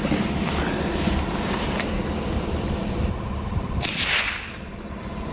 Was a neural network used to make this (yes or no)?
yes